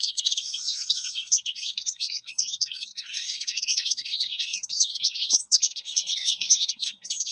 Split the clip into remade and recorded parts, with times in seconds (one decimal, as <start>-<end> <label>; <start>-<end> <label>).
0.0-7.3 remade